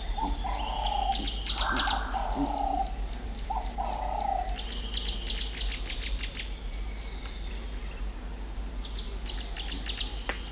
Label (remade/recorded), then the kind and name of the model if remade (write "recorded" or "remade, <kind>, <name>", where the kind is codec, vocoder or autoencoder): recorded